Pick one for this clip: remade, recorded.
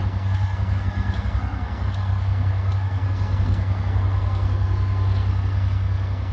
remade